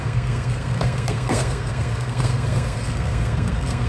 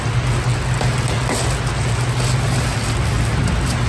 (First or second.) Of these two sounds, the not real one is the first